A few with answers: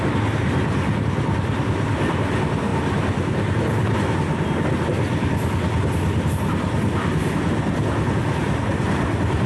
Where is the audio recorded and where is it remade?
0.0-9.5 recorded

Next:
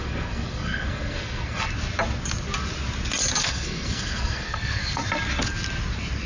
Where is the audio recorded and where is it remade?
0.0-1.7 remade; 1.7-3.4 recorded; 3.4-5.0 remade; 5.0-6.3 recorded

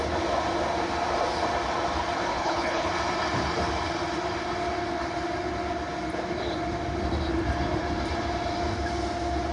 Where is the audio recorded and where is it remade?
0.0-2.3 recorded; 2.3-2.9 remade; 2.9-9.5 recorded

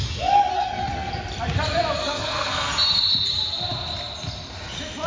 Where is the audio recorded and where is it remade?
0.0-0.5 recorded; 0.5-1.1 remade; 1.1-2.0 recorded; 2.0-2.7 remade; 2.7-5.1 recorded

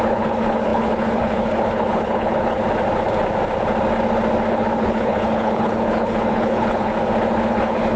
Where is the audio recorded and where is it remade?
0.0-2.6 remade; 2.6-4.5 recorded; 4.5-6.9 remade; 6.9-7.5 recorded; 7.5-8.0 remade